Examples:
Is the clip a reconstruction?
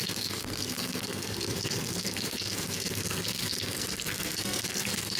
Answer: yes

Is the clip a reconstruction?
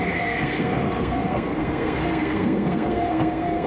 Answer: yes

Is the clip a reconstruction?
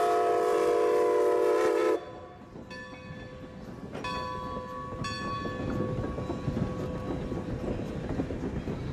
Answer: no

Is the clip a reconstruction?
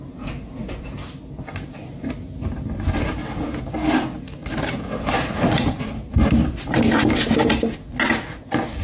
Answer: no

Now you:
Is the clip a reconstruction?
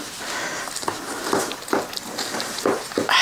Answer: no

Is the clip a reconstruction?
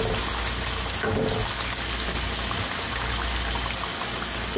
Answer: no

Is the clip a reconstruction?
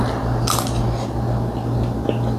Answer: no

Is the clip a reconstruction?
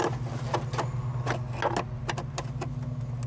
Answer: no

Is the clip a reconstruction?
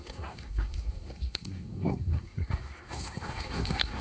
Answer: yes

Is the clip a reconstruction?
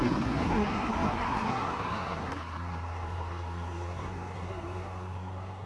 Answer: yes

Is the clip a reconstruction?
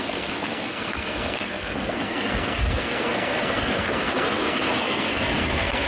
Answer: yes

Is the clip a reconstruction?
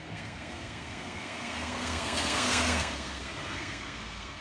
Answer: yes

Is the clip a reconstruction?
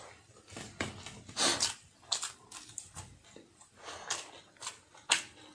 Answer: no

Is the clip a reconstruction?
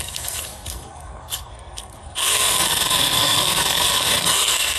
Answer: yes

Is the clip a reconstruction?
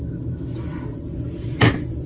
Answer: no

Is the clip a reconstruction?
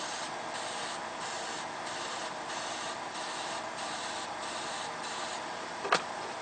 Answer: no